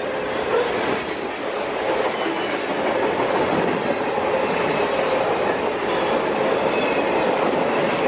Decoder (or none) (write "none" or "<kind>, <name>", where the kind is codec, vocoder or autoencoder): none